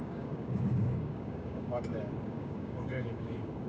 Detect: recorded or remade remade